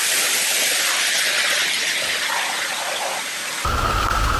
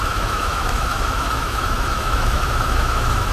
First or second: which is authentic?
first